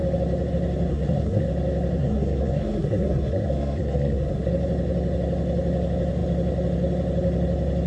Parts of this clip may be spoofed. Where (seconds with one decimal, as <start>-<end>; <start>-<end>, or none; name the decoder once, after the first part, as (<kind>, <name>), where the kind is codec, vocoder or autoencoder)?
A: 0.9-1.5 (codec, SNAC); 2.0-4.5